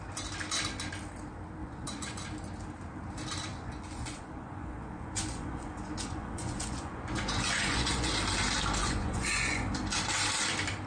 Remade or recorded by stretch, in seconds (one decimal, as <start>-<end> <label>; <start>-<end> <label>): 0.0-1.6 recorded; 1.6-2.2 remade; 2.2-3.5 recorded; 3.5-8.1 remade; 8.1-8.8 recorded; 8.8-9.8 remade; 9.8-10.9 recorded